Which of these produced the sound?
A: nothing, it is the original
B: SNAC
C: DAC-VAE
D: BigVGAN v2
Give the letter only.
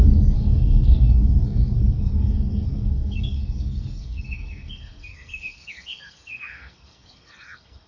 B